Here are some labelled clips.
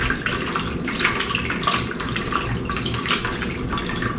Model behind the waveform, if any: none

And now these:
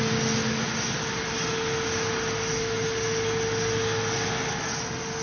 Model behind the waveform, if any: none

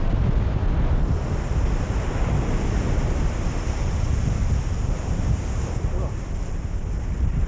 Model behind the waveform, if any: none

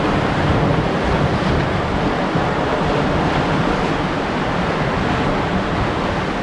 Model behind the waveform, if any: none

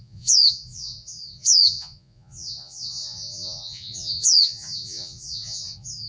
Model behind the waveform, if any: vocoder, Vocos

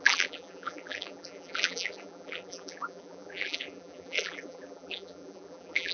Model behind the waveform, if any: vocoder, BigVGAN v2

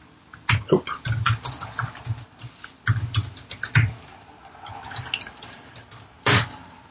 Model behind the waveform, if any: none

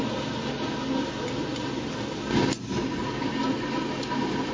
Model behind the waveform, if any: none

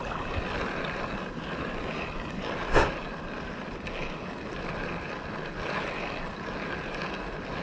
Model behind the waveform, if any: none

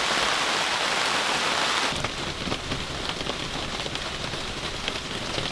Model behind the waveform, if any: none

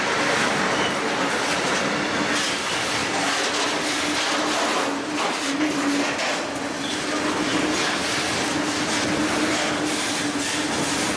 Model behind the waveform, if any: none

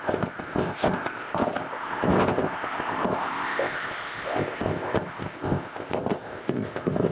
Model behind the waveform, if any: codec, ZipCodec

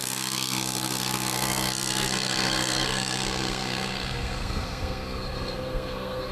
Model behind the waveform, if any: codec, SNAC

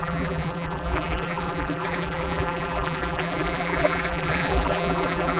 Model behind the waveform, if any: vocoder, BigVGAN v2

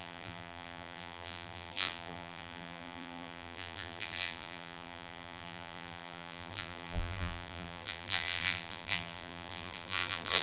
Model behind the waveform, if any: vocoder, BigVGAN v2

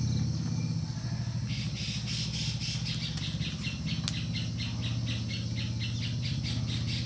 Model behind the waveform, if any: none